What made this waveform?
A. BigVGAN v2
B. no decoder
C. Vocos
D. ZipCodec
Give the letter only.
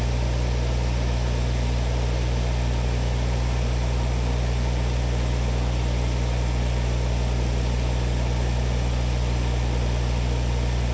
B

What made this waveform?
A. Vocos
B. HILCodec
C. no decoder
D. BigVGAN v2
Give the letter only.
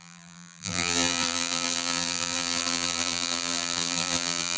D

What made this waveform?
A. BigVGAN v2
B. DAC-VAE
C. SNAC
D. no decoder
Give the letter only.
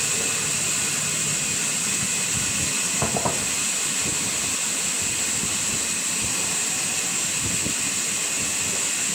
D